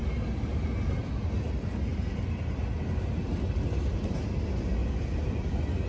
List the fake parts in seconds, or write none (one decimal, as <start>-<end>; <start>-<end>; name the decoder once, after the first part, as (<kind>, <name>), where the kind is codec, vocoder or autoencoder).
none